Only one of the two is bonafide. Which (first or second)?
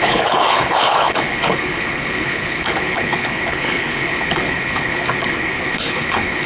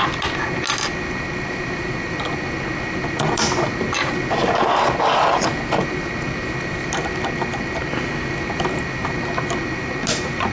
second